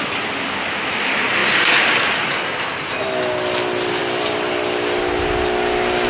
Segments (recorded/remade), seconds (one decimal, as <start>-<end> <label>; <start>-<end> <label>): 0.0-6.1 recorded